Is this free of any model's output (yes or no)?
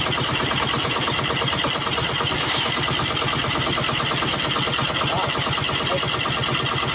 yes